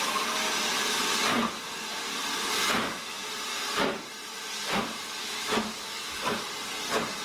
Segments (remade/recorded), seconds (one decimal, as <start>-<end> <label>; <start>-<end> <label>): 0.0-5.2 recorded; 5.2-6.3 remade; 6.3-7.2 recorded